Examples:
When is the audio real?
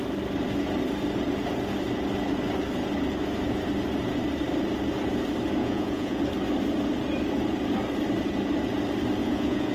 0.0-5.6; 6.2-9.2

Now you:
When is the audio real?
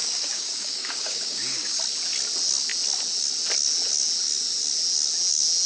1.8-5.7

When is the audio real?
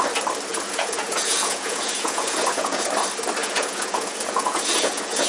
0.0-0.5; 2.9-3.4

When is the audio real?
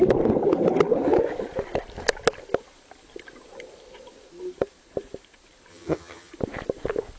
0.0-5.7; 6.3-7.2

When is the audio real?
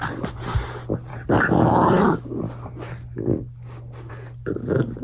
0.0-5.0